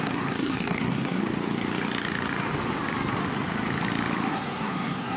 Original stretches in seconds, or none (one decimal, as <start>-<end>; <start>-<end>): 1.2-4.3